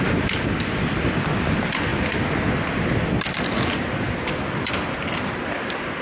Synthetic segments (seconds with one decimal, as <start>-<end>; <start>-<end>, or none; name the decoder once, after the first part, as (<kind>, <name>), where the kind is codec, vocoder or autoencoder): none